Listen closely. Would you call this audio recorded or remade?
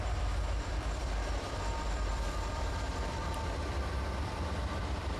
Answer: remade